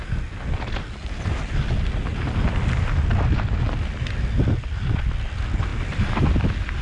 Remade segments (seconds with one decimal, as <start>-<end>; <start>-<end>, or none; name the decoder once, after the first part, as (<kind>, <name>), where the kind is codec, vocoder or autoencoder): none